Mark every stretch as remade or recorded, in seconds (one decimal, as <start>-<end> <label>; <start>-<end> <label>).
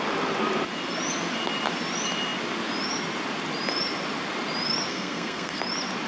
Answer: 0.0-4.9 recorded; 4.9-5.6 remade; 5.6-6.1 recorded